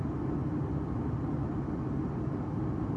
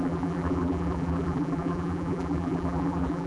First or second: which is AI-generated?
second